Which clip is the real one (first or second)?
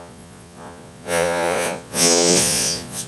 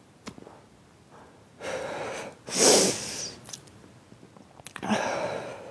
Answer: second